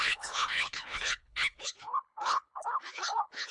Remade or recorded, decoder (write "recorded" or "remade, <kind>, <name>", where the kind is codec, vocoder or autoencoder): remade, codec, HILCodec